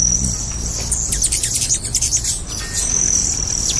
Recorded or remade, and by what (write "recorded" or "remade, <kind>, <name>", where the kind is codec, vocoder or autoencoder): recorded